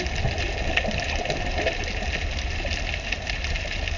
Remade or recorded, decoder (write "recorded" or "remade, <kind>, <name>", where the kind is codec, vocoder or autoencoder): recorded